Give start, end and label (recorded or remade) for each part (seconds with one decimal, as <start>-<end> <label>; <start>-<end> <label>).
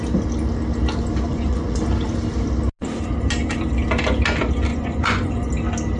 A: 0.0-1.3 recorded; 1.3-1.8 remade; 1.8-4.7 recorded; 4.7-5.5 remade; 5.5-6.0 recorded